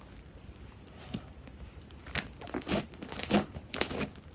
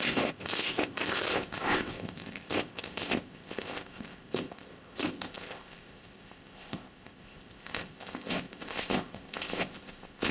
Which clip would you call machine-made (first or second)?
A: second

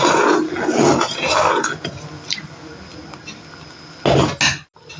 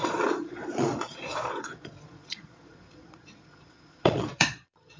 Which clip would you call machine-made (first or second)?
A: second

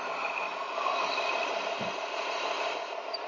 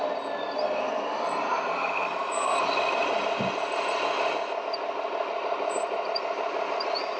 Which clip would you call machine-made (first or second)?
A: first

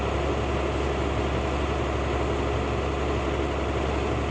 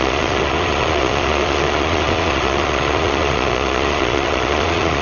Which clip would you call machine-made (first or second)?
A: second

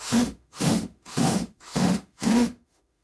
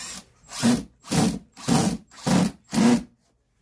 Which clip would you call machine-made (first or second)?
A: first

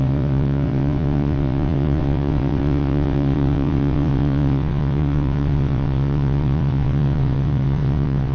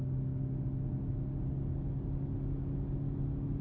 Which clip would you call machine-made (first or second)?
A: first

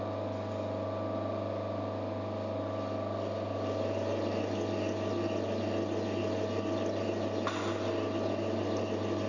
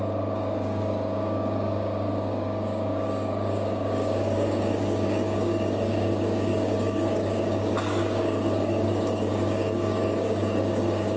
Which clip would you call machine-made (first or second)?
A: second